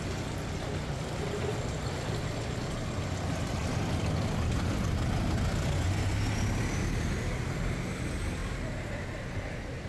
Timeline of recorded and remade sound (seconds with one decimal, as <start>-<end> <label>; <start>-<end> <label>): 0.0-9.9 recorded